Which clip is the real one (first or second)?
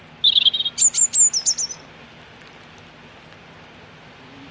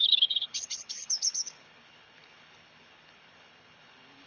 first